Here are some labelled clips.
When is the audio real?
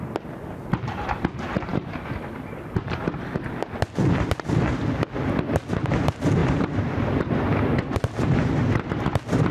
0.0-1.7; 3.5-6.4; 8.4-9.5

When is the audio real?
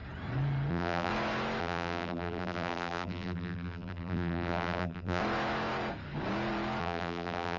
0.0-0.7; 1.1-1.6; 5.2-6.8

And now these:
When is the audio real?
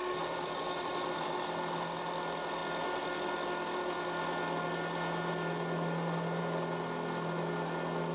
0.0-8.1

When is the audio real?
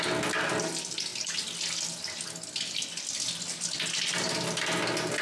0.0-5.2